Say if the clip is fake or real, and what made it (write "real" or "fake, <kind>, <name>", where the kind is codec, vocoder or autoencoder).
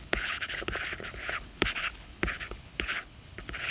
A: fake, codec, HILCodec